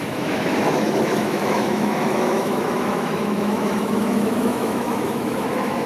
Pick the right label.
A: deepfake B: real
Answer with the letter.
A